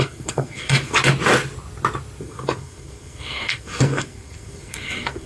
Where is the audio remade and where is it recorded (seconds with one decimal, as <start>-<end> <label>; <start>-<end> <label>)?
0.0-1.0 remade; 1.0-2.2 recorded; 2.2-5.3 remade